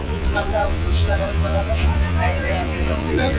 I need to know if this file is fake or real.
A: fake